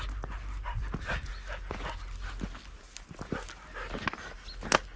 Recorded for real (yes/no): yes